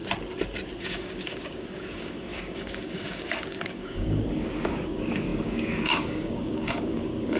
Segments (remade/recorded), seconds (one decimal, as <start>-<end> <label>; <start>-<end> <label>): 0.0-0.8 recorded; 0.8-7.4 remade